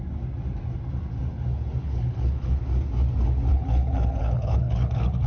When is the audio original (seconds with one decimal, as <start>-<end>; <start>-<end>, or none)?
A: 0.0-1.8; 2.6-3.5